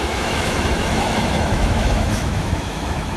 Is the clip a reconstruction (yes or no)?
yes